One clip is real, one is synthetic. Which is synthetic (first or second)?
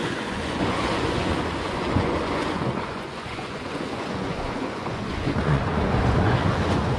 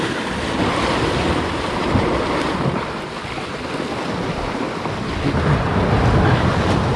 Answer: first